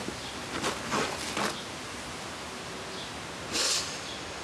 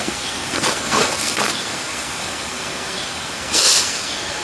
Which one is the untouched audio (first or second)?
first